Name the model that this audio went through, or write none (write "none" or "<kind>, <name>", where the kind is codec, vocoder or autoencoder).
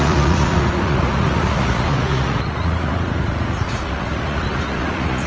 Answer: vocoder, Vocos